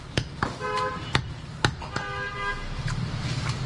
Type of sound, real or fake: fake